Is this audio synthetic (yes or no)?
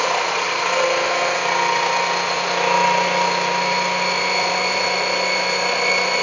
no